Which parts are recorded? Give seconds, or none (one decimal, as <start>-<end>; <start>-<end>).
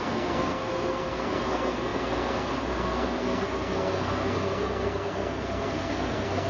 none